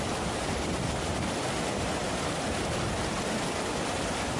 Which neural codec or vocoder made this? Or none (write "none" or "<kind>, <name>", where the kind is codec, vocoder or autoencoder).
none